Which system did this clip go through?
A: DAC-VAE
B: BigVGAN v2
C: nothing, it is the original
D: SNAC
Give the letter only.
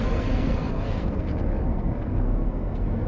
D